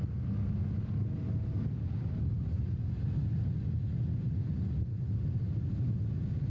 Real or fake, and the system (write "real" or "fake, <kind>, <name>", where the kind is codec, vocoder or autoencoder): real